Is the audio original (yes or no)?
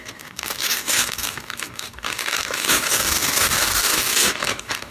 no